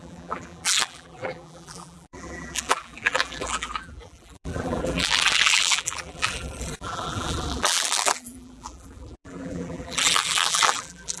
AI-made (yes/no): yes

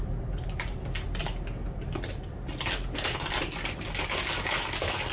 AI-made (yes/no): no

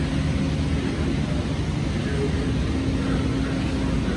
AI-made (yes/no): no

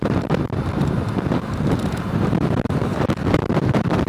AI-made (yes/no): yes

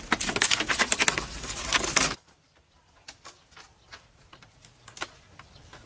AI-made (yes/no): yes